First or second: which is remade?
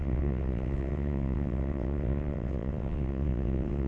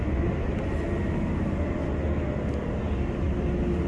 first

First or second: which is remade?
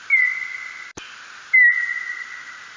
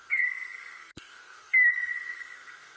second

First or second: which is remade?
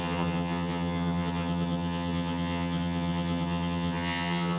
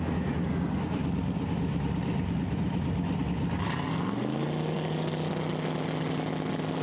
first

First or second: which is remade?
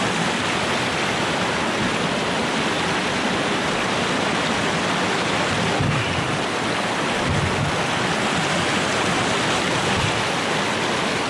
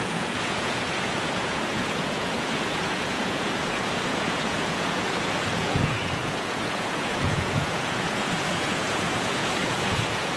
second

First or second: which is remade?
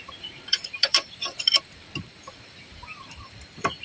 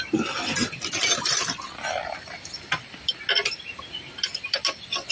first